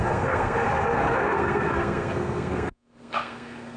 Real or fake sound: fake